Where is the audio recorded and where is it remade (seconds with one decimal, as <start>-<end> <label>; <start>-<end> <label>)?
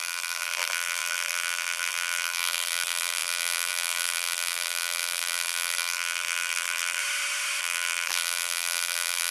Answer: 0.0-7.0 remade; 7.0-7.6 recorded; 7.6-9.3 remade